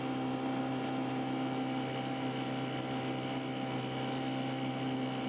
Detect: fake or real real